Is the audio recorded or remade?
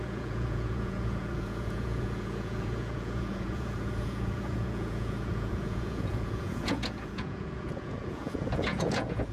remade